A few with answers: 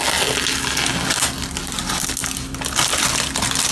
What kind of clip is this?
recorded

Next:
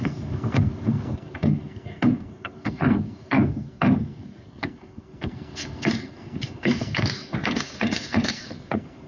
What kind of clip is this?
remade